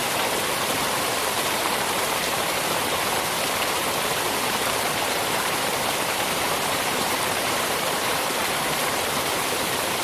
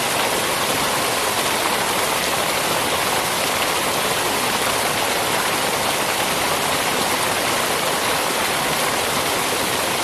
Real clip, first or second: second